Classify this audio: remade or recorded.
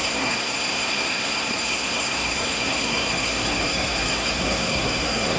remade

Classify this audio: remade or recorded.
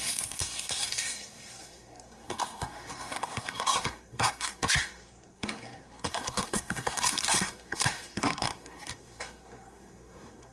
remade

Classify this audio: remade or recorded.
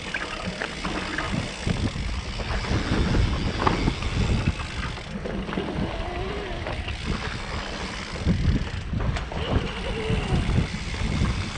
recorded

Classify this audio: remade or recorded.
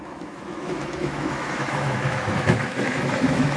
remade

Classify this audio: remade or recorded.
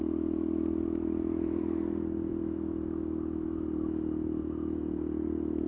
remade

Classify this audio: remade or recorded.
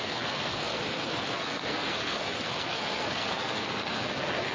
remade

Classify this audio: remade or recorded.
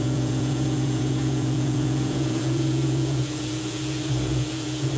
remade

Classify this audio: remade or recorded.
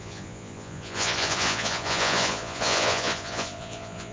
remade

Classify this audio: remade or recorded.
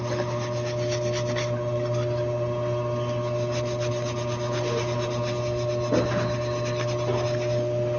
recorded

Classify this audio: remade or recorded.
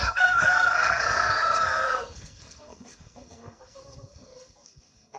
remade